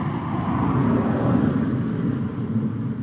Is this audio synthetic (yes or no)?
no